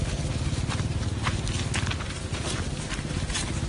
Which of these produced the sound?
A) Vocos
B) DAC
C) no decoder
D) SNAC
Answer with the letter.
C